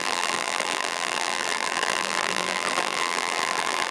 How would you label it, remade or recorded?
remade